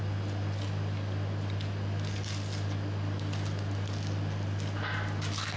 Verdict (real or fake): real